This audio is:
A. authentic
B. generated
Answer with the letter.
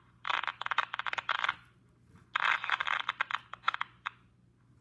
A